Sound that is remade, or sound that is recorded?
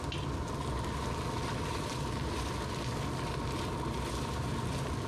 recorded